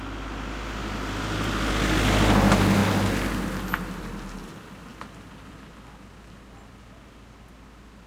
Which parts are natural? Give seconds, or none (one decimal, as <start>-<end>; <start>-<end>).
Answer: 0.0-8.1